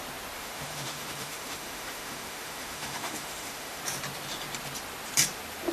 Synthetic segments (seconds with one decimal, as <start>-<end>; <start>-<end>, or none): 0.4-3.8